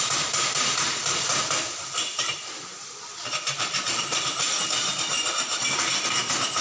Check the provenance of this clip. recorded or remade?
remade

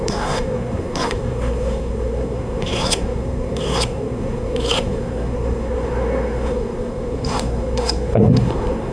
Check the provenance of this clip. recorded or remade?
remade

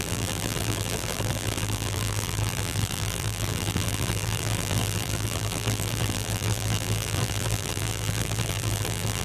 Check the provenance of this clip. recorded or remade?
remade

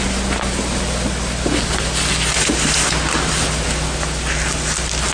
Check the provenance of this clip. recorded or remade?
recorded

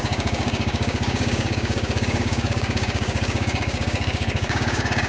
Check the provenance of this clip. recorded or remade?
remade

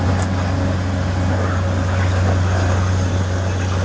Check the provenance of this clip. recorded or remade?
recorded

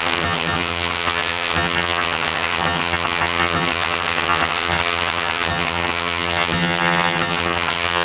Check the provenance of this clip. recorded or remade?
remade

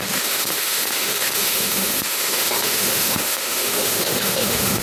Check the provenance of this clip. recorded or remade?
remade